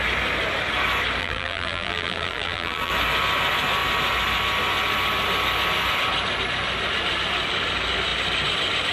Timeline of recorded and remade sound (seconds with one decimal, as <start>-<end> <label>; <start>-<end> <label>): 0.0-1.2 recorded; 1.2-2.9 remade; 2.9-8.9 recorded